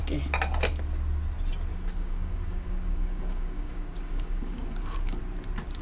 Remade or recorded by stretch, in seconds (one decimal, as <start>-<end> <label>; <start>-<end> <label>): 0.0-1.7 recorded; 1.7-5.2 remade; 5.2-5.8 recorded